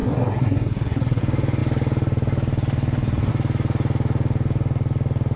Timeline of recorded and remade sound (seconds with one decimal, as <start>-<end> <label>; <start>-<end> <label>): 0.0-1.2 remade; 1.2-5.4 recorded